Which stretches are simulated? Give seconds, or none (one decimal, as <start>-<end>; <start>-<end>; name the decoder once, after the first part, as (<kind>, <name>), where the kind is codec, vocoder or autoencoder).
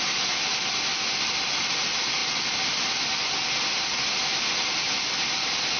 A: none